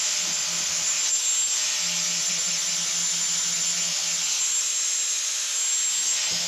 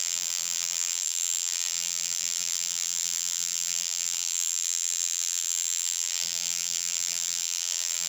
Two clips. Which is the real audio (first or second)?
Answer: first